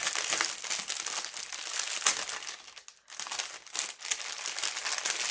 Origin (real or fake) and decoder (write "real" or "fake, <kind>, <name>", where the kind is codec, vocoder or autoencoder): real